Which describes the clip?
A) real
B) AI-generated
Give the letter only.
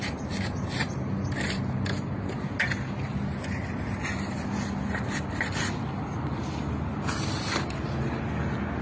A